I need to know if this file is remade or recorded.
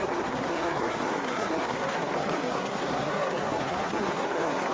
remade